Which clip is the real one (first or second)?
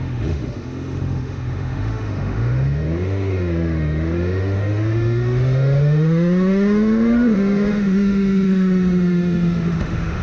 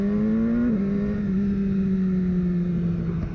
second